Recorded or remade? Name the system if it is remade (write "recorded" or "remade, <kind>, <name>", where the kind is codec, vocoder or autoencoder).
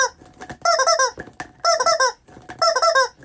recorded